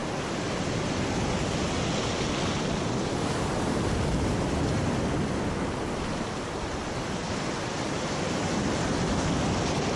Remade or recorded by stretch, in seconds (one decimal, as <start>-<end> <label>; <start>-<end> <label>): 0.0-10.0 recorded